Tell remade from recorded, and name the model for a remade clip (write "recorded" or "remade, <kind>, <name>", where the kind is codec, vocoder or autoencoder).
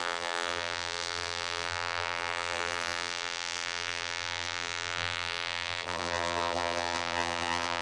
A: remade, vocoder, BigVGAN v2